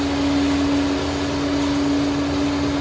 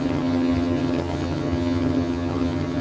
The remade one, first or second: second